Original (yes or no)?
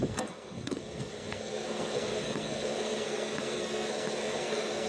no